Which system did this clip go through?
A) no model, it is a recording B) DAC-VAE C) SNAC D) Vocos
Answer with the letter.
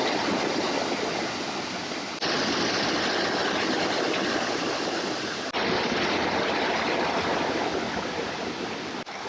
A